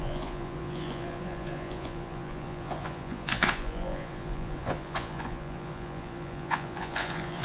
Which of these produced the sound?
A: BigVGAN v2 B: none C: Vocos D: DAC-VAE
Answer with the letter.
C